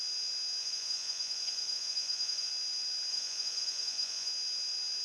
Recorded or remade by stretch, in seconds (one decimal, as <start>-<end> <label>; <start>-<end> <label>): 0.0-0.6 recorded; 0.6-2.5 remade; 2.5-3.1 recorded; 3.1-4.3 remade; 4.3-5.0 recorded